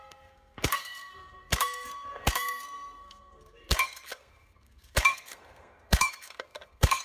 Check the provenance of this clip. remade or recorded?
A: remade